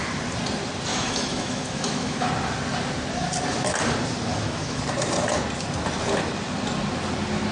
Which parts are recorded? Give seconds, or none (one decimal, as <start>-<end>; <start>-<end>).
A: 0.0-0.9; 2.3-4.3; 4.8-7.5